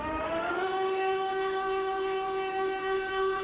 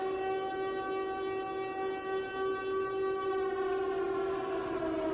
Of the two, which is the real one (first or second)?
second